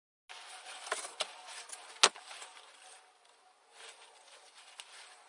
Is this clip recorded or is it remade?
recorded